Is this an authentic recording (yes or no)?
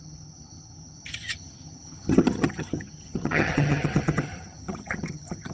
no